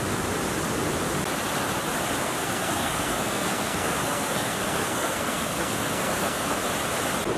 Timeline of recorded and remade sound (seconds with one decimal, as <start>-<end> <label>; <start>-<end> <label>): 0.0-2.2 recorded; 2.2-6.6 remade; 6.6-7.4 recorded